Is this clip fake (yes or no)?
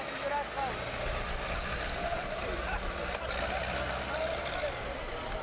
no